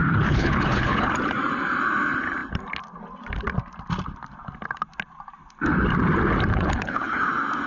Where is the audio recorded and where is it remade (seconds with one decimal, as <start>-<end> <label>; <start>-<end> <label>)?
0.0-1.1 remade; 1.1-6.5 recorded; 6.5-7.3 remade; 7.3-7.7 recorded